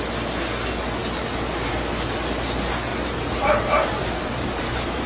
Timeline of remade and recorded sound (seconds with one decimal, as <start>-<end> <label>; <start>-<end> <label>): 0.0-2.9 recorded; 2.9-5.1 remade